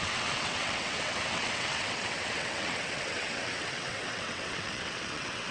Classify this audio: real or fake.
fake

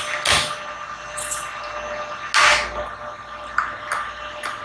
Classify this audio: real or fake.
real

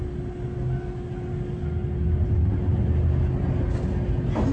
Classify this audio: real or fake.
real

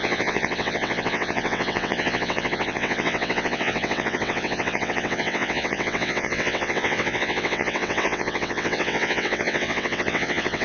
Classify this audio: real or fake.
fake